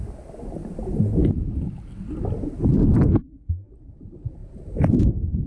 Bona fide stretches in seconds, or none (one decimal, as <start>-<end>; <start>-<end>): 0.0-3.2; 3.7-5.5